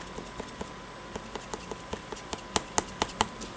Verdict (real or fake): real